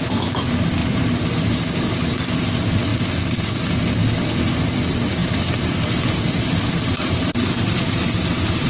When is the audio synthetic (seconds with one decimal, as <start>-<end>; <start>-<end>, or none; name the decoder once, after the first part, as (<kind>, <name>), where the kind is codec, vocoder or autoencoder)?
0.8-2.2 (vocoder, BigVGAN v2); 5.2-8.7